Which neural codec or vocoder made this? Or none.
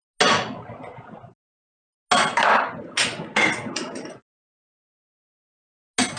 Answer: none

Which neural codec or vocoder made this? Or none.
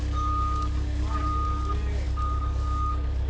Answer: codec, DAC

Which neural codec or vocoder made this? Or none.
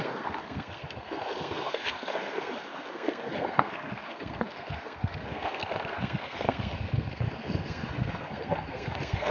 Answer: codec, SNAC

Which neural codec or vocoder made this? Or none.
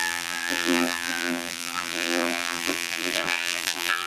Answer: vocoder, BigVGAN v2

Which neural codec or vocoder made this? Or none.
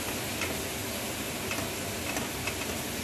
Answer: none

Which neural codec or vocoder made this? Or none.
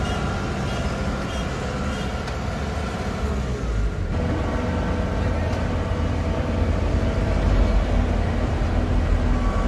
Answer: none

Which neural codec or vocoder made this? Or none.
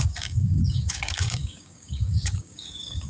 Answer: codec, DAC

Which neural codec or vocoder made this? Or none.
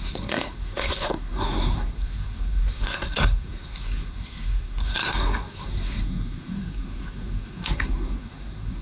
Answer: codec, SNAC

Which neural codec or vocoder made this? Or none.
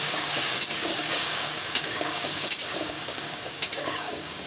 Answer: codec, DAC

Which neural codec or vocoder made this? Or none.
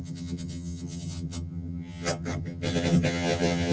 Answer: vocoder, HiFi-GAN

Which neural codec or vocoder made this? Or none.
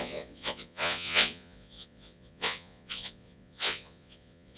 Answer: vocoder, Vocos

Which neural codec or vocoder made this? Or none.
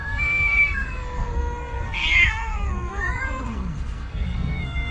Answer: codec, SNAC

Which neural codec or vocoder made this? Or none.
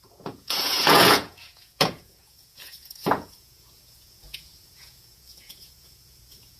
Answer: vocoder, Vocos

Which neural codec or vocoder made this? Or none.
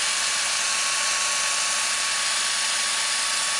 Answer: none